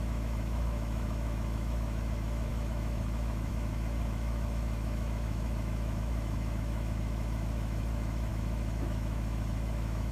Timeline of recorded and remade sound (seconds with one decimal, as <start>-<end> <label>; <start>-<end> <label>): 0.0-10.1 remade